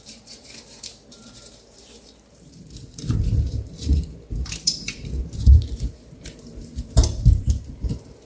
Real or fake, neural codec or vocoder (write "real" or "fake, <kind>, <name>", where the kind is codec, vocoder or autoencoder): fake, vocoder, BigVGAN v2